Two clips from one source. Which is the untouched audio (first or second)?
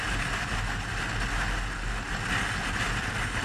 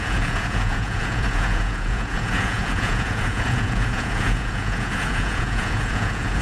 first